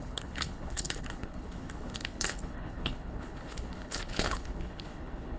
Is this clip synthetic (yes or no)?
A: yes